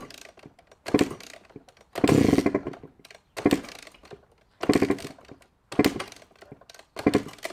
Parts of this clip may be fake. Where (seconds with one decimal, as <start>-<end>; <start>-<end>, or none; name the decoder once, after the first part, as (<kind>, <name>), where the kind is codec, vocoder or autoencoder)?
none